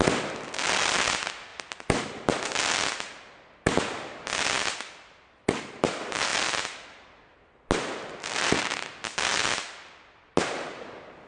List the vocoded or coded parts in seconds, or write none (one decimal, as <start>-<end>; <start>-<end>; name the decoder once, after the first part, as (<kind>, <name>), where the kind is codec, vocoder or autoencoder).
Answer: none

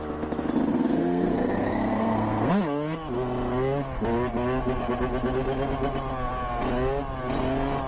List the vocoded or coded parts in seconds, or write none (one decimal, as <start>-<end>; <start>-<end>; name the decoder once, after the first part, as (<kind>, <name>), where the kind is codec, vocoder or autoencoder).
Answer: 0.7-2.5 (codec, SNAC)

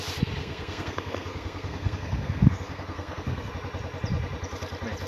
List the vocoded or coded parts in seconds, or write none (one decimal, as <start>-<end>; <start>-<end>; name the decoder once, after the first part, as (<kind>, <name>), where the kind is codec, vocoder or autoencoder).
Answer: 0.4-3.5 (codec, SNAC)

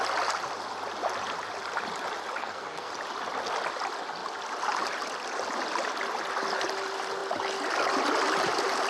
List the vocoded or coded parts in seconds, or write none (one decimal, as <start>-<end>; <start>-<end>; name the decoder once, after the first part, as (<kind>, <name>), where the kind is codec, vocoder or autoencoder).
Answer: 2.4-2.9 (codec, SNAC)

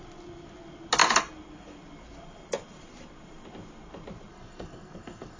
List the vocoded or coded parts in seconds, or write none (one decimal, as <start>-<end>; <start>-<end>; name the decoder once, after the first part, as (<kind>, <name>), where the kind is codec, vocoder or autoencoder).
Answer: 4.3-5.4 (codec, SNAC)

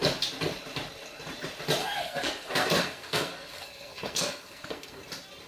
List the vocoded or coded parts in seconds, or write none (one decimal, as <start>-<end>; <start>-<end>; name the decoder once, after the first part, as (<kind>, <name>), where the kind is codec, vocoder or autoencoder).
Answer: 1.8-5.0 (codec, SNAC)